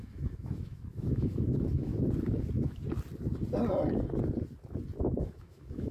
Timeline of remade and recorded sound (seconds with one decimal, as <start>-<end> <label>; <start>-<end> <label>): 0.0-1.9 remade; 1.9-5.0 recorded; 5.0-5.9 remade